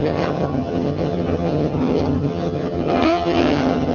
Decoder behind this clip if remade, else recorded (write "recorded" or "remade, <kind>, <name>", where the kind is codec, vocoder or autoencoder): remade, vocoder, HiFi-GAN